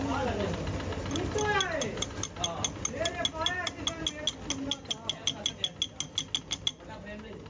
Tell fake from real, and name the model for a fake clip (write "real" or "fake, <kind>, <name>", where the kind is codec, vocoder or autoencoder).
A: real